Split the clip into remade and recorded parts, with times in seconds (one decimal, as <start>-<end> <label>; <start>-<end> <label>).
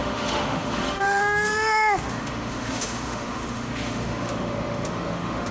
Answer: 0.0-5.5 remade